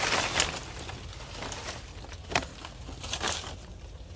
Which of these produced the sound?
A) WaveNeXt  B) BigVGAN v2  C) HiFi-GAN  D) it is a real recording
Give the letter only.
D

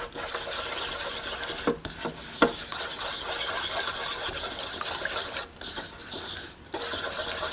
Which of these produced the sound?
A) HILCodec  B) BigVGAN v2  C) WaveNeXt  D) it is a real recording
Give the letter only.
D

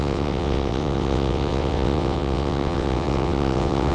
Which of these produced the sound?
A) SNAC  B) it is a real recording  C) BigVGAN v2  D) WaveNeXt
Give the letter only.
D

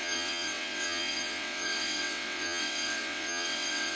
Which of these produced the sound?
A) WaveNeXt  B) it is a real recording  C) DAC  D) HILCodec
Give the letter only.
A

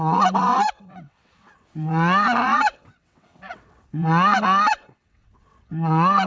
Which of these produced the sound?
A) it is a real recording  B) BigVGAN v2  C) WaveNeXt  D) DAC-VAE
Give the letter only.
C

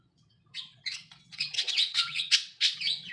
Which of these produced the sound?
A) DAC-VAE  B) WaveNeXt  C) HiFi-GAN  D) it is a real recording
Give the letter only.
B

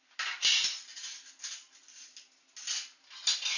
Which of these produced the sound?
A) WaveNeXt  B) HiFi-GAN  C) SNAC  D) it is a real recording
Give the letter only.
D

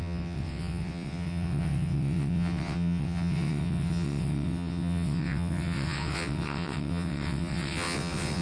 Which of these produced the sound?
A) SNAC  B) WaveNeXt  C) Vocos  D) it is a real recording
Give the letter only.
B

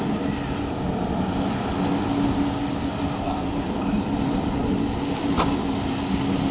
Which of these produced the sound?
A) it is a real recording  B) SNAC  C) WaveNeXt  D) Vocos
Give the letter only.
A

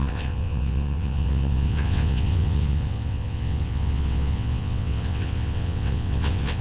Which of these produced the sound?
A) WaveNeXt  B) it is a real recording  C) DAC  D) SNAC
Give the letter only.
A